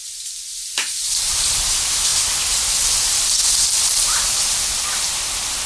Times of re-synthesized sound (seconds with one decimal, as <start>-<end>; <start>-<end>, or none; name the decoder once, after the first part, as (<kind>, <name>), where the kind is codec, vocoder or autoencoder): 1.7-2.1 (vocoder, BigVGAN v2)